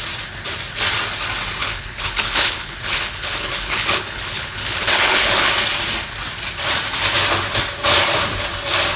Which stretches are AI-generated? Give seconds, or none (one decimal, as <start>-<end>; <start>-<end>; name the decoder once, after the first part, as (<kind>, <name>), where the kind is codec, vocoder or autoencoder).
1.6-5.5 (codec, HILCodec)

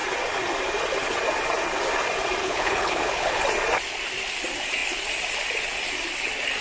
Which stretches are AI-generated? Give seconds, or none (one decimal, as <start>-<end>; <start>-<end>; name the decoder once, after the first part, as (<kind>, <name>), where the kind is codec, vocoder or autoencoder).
2.4-3.4 (codec, HILCodec)

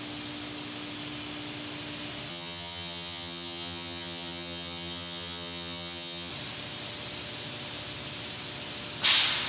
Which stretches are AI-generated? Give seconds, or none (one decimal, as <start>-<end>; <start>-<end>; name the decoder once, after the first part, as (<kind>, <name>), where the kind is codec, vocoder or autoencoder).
2.3-6.3 (vocoder, HiFi-GAN)